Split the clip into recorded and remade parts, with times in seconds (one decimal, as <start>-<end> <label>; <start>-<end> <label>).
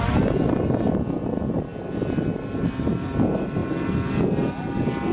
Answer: 0.0-5.1 recorded